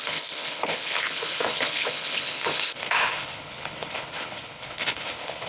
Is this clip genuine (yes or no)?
no